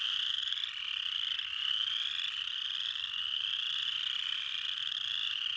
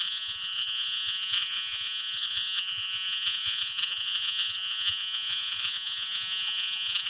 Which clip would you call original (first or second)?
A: first